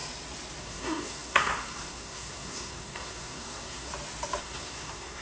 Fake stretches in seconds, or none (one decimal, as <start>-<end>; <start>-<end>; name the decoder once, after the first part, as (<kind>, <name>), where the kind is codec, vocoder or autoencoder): 0.6-3.9 (codec, SNAC); 4.4-5.2